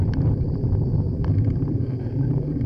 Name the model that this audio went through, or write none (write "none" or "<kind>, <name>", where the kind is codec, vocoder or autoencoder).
vocoder, BigVGAN v2